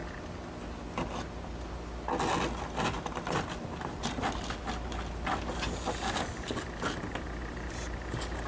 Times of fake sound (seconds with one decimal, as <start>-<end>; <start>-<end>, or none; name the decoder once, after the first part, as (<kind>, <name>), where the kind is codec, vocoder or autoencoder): none